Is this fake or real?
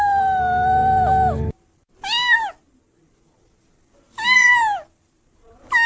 real